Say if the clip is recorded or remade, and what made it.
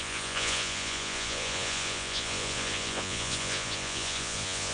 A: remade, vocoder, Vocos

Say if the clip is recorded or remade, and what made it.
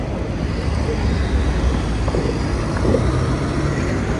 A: recorded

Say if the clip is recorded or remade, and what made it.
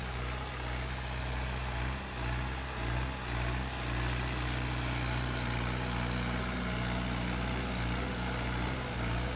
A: recorded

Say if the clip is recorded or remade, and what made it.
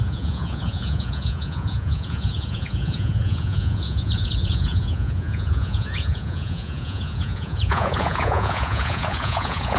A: remade, vocoder, Vocos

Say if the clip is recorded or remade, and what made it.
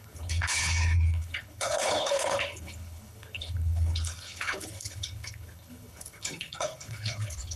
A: remade, codec, HILCodec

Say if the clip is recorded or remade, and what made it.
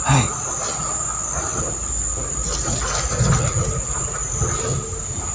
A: recorded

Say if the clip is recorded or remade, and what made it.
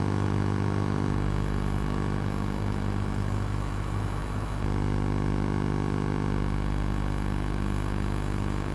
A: remade, autoencoder, DAC-VAE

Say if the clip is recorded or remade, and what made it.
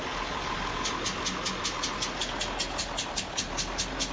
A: recorded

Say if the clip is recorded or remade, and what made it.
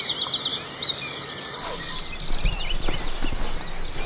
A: recorded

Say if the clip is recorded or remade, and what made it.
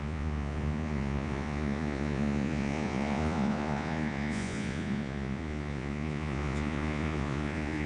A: remade, vocoder, Vocos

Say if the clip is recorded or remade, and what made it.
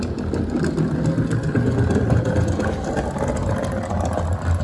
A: recorded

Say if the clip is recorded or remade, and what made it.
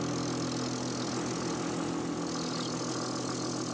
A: recorded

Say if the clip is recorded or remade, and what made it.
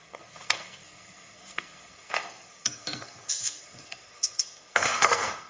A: remade, codec, SNAC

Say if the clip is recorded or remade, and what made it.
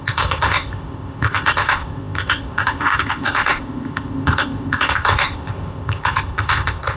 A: remade, codec, ZipCodec